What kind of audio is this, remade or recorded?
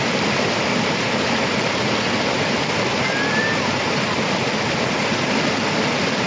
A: remade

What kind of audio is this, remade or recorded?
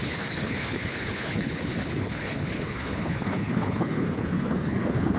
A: remade